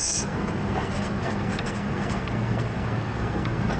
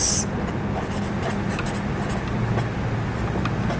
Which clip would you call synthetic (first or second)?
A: first